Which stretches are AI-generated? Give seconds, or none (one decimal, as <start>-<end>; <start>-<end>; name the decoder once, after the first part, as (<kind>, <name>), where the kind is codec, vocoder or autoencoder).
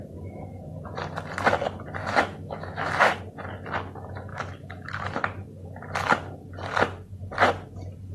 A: 2.0-3.2 (autoencoder, DAC-VAE); 4.3-5.2